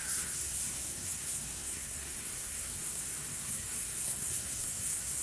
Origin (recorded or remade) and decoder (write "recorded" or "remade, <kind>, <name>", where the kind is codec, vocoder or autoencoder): remade, codec, SNAC